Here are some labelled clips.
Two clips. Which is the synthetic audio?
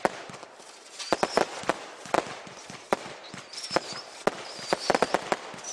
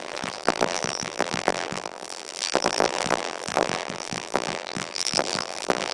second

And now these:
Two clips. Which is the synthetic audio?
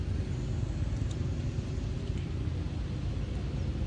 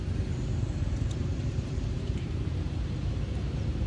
second